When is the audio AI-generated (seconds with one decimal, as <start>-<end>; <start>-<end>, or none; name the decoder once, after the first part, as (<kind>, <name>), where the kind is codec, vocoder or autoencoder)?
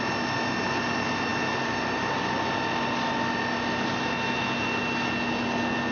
none